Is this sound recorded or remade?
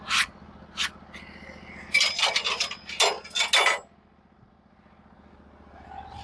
recorded